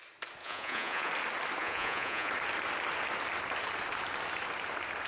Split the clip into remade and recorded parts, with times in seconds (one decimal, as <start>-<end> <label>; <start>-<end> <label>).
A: 0.0-0.4 recorded; 0.4-1.1 remade; 1.1-1.6 recorded; 1.6-2.3 remade; 2.3-5.1 recorded

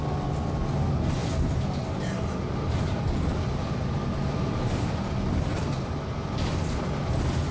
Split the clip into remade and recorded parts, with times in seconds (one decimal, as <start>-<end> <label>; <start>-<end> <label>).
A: 0.0-7.5 recorded

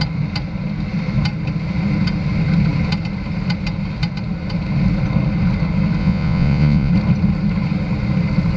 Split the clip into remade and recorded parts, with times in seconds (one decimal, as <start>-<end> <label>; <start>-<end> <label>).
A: 0.0-6.0 recorded; 6.0-6.9 remade; 6.9-8.6 recorded

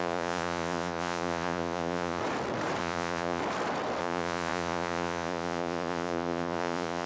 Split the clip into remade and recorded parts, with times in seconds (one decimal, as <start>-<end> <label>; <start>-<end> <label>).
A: 0.0-2.2 remade; 2.2-2.8 recorded; 2.8-3.4 remade; 3.4-4.0 recorded; 4.0-7.1 remade

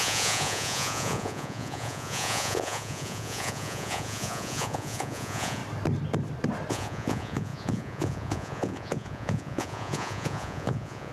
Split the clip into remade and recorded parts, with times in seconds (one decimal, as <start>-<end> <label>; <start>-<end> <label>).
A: 0.0-5.6 remade; 5.6-6.7 recorded; 6.7-11.1 remade

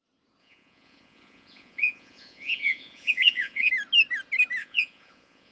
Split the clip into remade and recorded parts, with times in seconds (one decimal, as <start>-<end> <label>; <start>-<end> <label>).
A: 0.0-0.4 recorded; 0.4-3.7 remade; 3.7-4.6 recorded; 4.6-5.5 remade

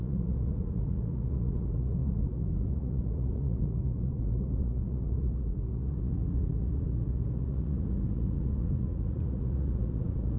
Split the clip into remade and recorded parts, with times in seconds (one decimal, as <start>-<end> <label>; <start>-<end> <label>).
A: 0.0-10.4 remade